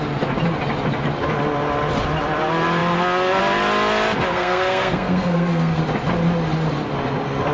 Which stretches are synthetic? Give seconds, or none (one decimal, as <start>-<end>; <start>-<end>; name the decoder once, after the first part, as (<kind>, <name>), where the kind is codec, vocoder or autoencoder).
4.3-5.8 (codec, SNAC)